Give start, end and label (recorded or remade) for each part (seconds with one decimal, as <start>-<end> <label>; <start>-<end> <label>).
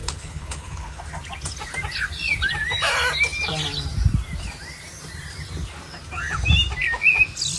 0.0-1.0 remade; 1.0-7.6 recorded